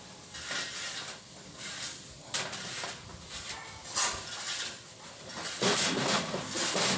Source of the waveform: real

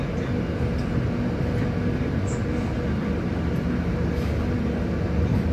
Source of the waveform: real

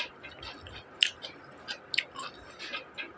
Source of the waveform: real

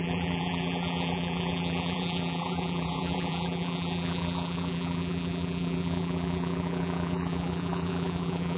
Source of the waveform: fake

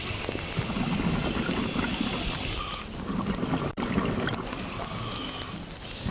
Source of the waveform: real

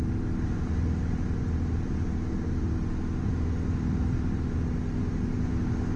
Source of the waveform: real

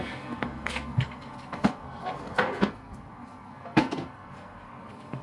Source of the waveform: fake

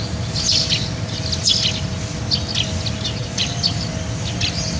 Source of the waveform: real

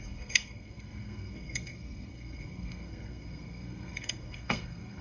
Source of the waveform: fake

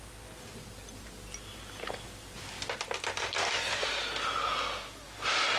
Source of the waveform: real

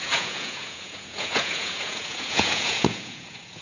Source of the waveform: fake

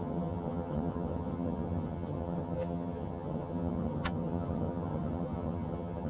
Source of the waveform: fake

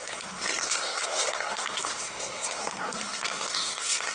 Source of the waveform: fake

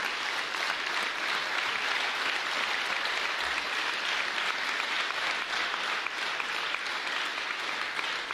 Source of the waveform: real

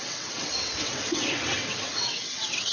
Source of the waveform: fake